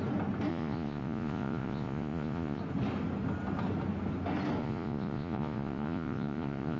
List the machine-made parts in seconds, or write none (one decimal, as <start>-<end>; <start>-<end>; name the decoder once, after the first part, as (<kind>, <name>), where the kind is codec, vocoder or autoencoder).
0.5-2.6 (vocoder, Vocos); 4.6-6.8